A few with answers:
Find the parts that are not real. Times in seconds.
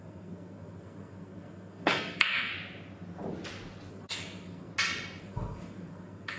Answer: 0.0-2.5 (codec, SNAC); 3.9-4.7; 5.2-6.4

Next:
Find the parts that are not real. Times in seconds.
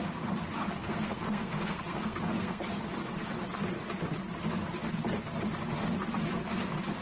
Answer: 0.8-2.6 (codec, SNAC)